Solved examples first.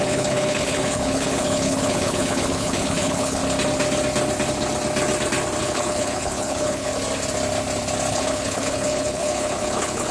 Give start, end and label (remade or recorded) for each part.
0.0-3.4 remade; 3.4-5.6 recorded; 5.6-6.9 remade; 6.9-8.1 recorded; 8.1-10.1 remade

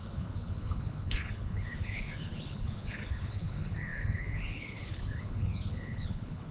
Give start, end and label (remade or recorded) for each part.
0.0-6.5 remade

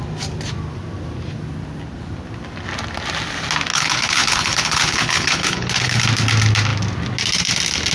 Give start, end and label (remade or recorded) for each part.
0.0-3.7 recorded; 3.7-6.0 remade; 6.0-7.9 recorded

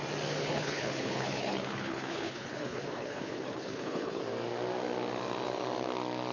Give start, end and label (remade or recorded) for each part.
0.0-0.4 recorded; 0.4-4.2 remade; 4.2-6.3 recorded